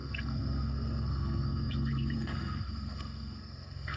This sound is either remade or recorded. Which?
remade